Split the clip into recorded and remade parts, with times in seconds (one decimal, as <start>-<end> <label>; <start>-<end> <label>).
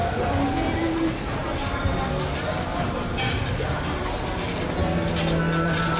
0.0-0.8 recorded; 0.8-2.0 remade; 2.0-3.1 recorded; 3.1-4.6 remade; 4.6-6.0 recorded